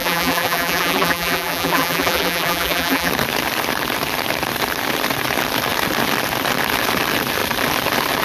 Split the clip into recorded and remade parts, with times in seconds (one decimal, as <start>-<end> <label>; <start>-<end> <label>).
0.0-3.1 remade; 3.1-8.2 recorded